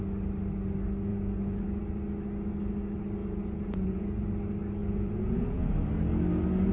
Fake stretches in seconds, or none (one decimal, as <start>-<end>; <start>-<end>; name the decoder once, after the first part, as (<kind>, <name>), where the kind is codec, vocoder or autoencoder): 1.1-1.8 (vocoder, Vocos); 3.2-4.2; 4.8-5.7

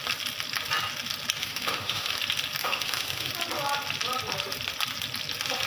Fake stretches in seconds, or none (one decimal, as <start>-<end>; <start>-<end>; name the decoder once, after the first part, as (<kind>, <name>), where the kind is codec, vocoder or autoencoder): 1.4-2.1 (autoencoder, DAC-VAE); 2.6-3.3

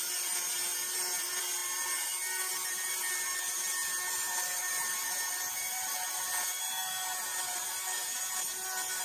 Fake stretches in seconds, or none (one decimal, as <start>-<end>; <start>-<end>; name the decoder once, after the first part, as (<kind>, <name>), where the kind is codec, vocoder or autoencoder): none

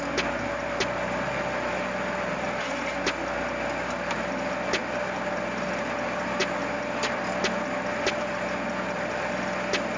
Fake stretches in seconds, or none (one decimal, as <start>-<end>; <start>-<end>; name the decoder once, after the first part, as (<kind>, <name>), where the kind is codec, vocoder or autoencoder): none